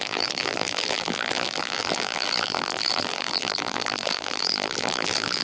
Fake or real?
fake